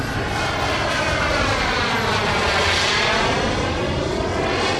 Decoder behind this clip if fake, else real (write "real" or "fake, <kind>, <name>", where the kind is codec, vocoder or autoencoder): real